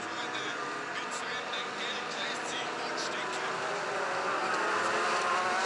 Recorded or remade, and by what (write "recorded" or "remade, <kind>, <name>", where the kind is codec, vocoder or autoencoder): recorded